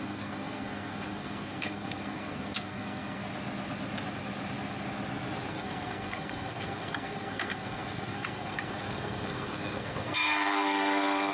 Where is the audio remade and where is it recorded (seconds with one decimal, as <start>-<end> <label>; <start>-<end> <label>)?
0.0-3.2 remade; 3.2-5.5 recorded; 5.5-11.3 remade